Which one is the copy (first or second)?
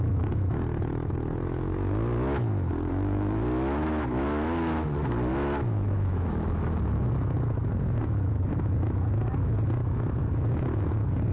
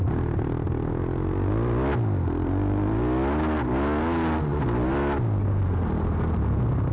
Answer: first